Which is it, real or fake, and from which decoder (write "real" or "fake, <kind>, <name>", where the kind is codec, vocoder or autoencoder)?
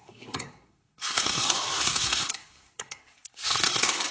fake, codec, SNAC